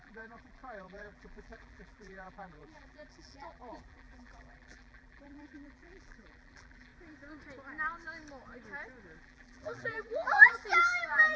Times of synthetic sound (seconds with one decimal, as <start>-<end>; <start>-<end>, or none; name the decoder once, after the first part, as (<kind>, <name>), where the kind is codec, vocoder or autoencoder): 0.0-6.9 (vocoder, BigVGAN v2); 9.2-11.4